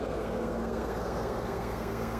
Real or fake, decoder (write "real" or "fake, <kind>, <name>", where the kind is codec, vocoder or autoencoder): fake, codec, SNAC